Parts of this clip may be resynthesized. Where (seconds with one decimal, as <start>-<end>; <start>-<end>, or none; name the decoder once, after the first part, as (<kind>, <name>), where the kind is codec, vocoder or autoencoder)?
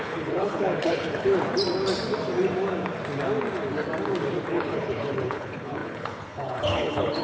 0.0-1.3 (codec, HILCodec); 4.5-7.2